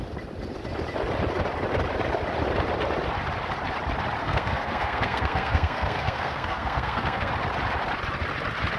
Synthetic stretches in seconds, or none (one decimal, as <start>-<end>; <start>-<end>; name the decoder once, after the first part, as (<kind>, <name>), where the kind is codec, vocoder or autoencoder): 4.2-7.3 (codec, SNAC)